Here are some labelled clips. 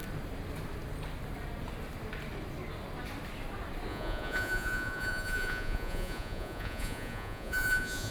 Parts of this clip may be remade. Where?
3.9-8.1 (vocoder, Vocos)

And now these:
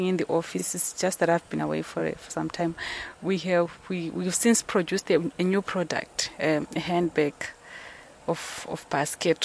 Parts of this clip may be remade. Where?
0.6-1.6 (vocoder, Vocos)

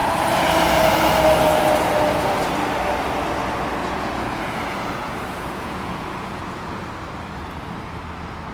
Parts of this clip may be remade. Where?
0.0-0.9 (vocoder, Vocos); 3.8-6.8

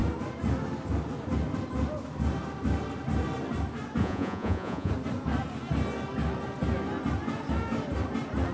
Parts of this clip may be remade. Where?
4.0-4.9 (vocoder, Vocos)

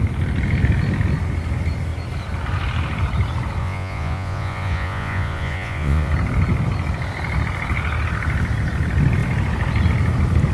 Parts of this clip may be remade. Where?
3.6-6.1 (vocoder, Vocos)

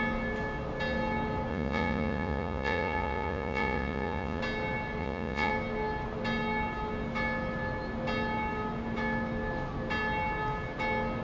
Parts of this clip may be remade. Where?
1.5-4.4 (vocoder, Vocos); 5.0-5.5